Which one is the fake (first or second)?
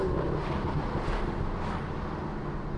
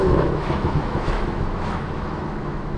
second